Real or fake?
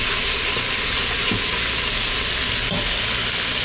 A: real